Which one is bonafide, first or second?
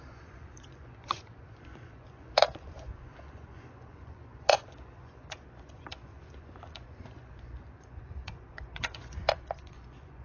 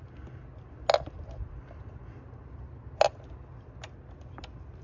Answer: second